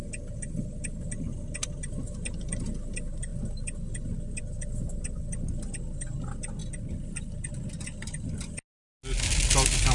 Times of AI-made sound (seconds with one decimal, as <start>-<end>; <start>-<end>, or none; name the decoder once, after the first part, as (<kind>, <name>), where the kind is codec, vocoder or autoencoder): none